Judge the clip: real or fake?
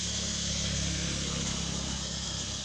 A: fake